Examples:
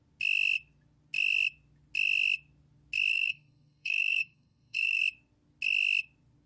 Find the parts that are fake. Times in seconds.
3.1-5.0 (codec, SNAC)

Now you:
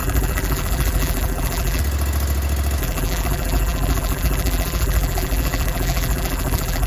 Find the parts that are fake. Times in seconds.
0.0-1.8 (vocoder, BigVGAN v2); 2.8-6.9

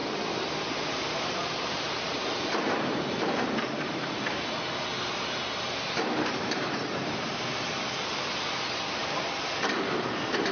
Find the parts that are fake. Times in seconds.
0.0-4.5 (vocoder, BigVGAN v2); 4.9-7.5; 9.0-9.5

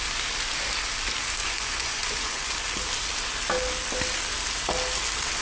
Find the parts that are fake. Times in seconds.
1.4-2.5 (vocoder, Vocos)

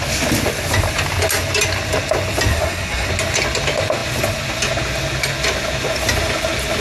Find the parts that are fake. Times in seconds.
2.5-3.1 (codec, SNAC)

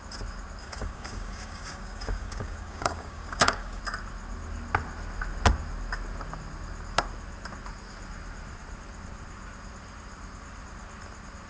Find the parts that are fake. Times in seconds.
0.6-3.8 (codec, DAC)